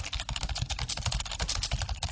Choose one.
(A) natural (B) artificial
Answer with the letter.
A